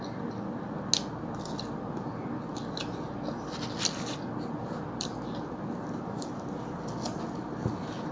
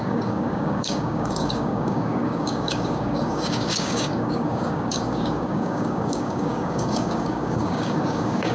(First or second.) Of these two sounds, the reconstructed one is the second